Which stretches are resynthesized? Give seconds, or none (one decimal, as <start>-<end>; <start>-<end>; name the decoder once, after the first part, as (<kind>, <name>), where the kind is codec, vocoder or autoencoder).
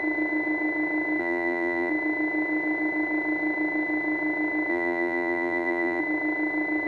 1.2-1.9 (vocoder, BigVGAN v2); 4.7-6.0